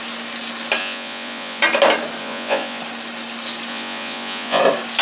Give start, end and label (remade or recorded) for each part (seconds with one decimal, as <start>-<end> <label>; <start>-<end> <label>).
0.0-0.8 recorded; 0.8-1.6 remade; 1.6-2.2 recorded; 2.2-2.8 remade; 2.8-3.7 recorded; 3.7-4.6 remade; 4.6-5.0 recorded